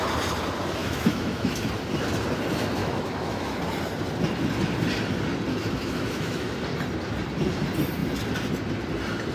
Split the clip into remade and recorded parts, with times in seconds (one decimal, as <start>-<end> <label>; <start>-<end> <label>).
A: 0.0-0.8 recorded; 0.8-1.7 remade; 1.7-2.8 recorded; 2.8-3.6 remade; 3.6-5.5 recorded; 5.5-6.5 remade; 6.5-9.3 recorded